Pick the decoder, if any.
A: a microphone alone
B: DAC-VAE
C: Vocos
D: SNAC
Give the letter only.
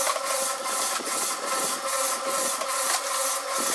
A